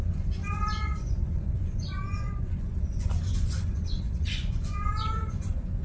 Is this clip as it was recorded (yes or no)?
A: no